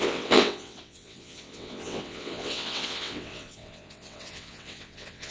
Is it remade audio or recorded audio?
remade